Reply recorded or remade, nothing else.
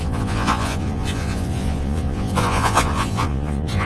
remade